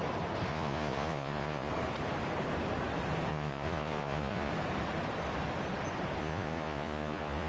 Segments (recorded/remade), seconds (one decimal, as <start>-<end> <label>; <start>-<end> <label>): 0.0-0.5 recorded; 0.5-1.7 remade; 1.7-3.3 recorded; 3.3-4.5 remade; 4.5-6.2 recorded; 6.2-7.5 remade

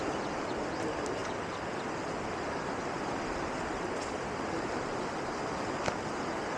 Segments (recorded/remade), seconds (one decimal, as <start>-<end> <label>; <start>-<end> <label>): 0.0-6.6 recorded

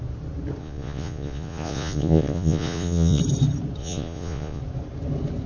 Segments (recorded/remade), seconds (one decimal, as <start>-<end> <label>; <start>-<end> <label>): 0.0-0.6 recorded; 0.6-3.2 remade; 3.2-3.8 recorded; 3.8-4.6 remade; 4.6-5.5 recorded

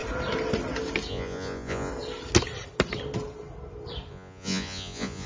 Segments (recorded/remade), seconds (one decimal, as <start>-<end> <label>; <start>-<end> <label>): 0.0-1.1 recorded; 1.1-1.9 remade; 1.9-4.1 recorded; 4.1-5.3 remade

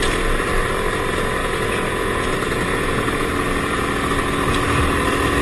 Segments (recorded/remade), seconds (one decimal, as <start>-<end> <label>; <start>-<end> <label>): 0.0-1.4 recorded; 1.4-2.3 remade; 2.3-2.7 recorded; 2.7-3.3 remade; 3.3-5.4 recorded

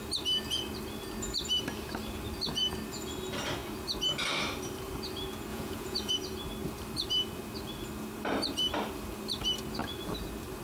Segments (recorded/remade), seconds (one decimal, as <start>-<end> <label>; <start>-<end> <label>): 0.0-5.5 recorded; 5.5-6.1 remade; 6.1-10.6 recorded

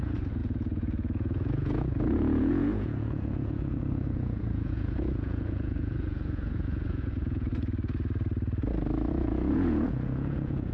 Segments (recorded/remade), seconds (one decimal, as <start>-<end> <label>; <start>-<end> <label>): 0.0-7.5 remade; 7.5-9.1 recorded; 9.1-10.7 remade